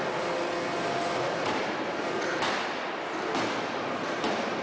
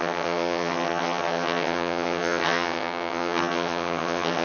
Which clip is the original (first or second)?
first